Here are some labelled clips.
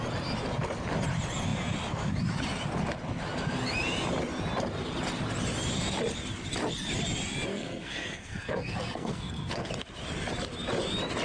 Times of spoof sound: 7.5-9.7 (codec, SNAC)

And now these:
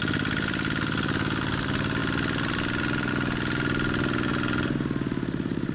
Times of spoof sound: none

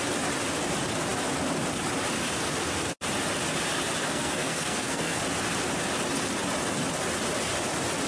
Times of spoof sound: 4.0-5.2 (codec, SNAC)

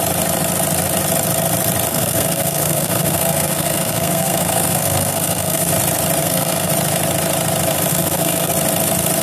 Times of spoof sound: 1.9-5.7 (codec, SNAC); 6.2-6.7; 7.9-8.5

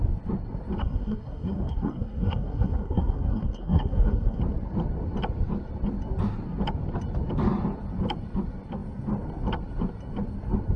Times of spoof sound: 0.8-4.4 (codec, SNAC)

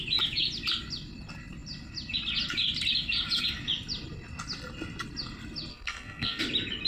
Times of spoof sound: 5.7-6.4 (codec, SNAC)

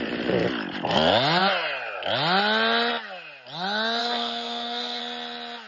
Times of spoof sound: 4.0-5.0 (codec, SNAC)